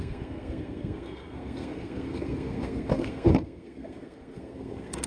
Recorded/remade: remade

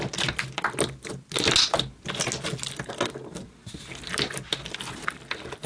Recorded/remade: recorded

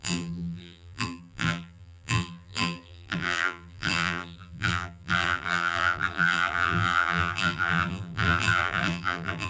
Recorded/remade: remade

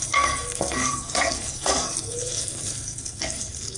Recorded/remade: remade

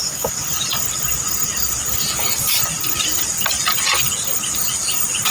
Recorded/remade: recorded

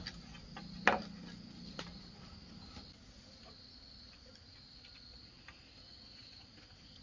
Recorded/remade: recorded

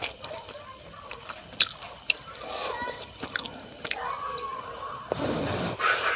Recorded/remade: recorded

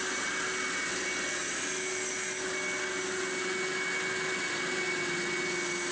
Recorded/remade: recorded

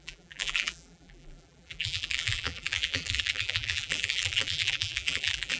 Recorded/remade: remade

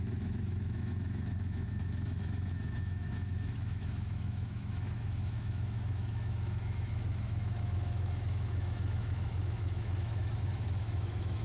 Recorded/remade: remade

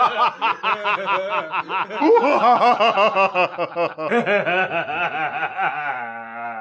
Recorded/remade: recorded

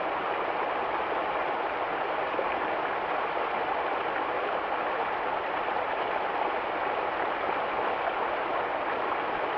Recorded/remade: recorded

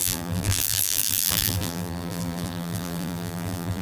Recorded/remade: remade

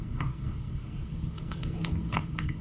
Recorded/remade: remade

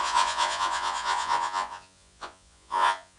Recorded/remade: remade